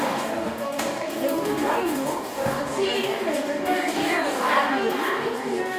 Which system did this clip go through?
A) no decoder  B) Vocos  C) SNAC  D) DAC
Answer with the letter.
D